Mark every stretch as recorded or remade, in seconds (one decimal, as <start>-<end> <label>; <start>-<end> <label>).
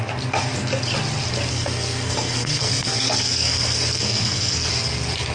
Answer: 0.0-1.5 recorded; 1.5-4.7 remade; 4.7-5.3 recorded